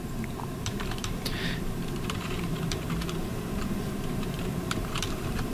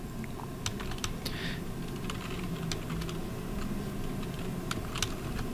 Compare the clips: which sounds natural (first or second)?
second